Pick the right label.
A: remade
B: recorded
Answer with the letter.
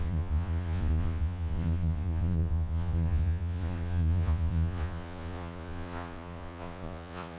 A